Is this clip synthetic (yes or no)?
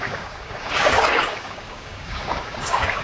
yes